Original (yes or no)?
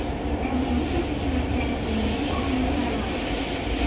yes